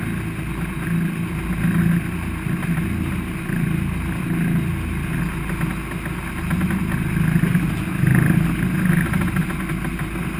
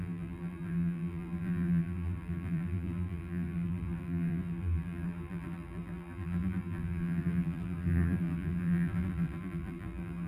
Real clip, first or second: first